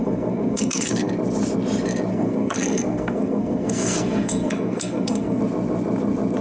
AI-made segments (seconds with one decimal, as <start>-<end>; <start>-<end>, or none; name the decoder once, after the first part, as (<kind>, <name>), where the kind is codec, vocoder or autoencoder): 0.0-1.1 (codec, SNAC); 2.1-5.4